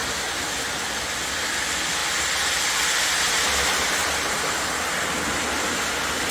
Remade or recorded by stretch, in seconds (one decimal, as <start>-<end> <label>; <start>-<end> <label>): 0.0-6.3 recorded